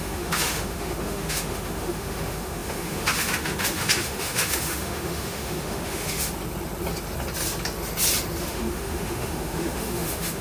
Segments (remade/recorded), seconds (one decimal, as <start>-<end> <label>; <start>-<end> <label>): 0.0-6.3 remade; 6.3-8.4 recorded; 8.4-10.4 remade